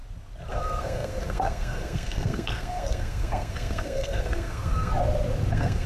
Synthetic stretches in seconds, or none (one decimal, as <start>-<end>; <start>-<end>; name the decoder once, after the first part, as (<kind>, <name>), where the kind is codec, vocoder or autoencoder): 0.5-4.9 (codec, SNAC); 5.5-5.9